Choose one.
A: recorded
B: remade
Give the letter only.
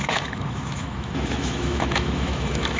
B